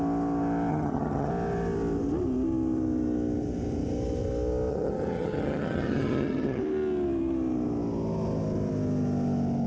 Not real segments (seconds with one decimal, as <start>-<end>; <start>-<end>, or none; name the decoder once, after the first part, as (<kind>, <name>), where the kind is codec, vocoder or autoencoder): 0.7-1.3 (vocoder, HiFi-GAN); 4.7-6.6